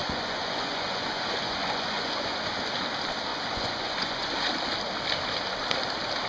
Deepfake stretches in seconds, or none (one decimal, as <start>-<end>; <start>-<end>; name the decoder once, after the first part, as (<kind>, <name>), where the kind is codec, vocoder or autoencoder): 0.0-2.5 (vocoder, Vocos); 3.3-4.3